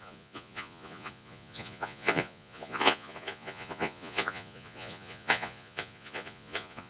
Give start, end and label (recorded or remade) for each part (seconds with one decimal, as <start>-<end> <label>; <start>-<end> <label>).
0.0-6.9 remade